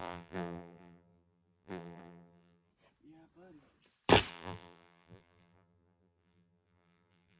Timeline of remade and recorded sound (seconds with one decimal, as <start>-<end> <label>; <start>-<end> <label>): 0.0-2.7 remade; 2.7-4.3 recorded; 4.3-7.4 remade